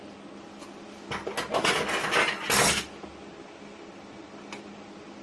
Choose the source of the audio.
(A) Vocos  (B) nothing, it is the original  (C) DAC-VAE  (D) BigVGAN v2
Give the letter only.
B